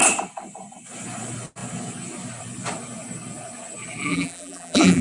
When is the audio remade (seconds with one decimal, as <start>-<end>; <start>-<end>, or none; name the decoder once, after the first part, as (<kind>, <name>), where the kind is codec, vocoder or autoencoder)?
4.1-5.0 (vocoder, BigVGAN v2)